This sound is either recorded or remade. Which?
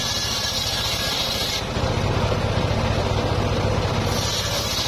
recorded